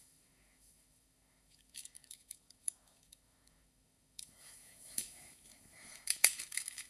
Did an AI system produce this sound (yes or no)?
yes